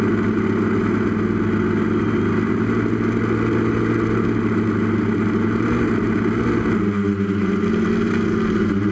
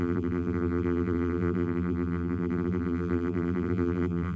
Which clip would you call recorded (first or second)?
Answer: first